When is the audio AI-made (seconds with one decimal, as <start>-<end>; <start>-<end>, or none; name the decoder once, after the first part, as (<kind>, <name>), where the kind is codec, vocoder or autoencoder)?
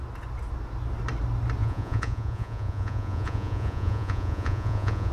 1.6-5.1 (vocoder, Vocos)